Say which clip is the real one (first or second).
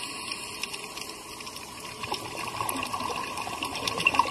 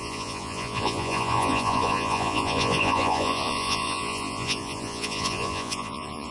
first